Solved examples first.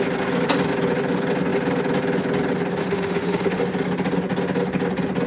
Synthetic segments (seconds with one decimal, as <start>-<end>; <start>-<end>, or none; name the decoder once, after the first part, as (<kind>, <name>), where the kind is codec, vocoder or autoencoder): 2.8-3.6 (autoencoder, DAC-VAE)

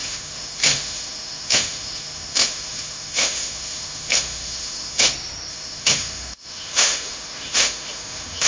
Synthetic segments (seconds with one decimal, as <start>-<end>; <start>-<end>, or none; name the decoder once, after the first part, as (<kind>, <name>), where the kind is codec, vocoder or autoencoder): 0.0-5.1 (autoencoder, DAC-VAE); 5.5-8.5

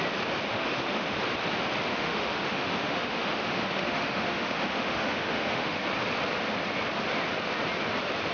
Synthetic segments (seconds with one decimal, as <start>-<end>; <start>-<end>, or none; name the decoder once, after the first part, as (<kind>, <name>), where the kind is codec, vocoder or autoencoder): 0.5-1.2 (autoencoder, DAC-VAE); 1.9-5.8